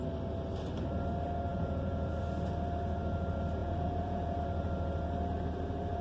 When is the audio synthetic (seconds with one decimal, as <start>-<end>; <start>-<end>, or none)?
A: 1.5-2.2; 3.6-4.4